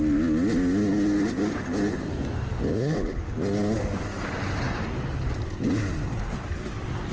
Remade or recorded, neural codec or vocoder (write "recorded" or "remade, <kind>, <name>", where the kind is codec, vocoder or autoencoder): recorded